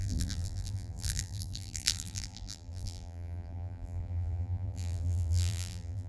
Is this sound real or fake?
fake